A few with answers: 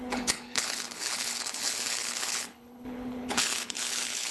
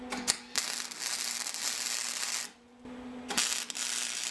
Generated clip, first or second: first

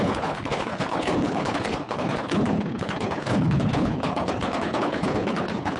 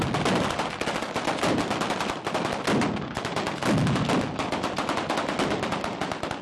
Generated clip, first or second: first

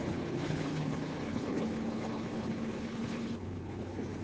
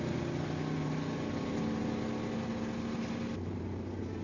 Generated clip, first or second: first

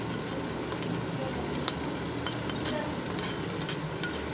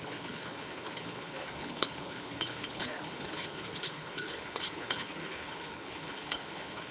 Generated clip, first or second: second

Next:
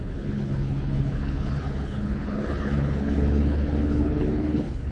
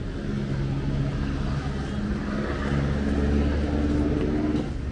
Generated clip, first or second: first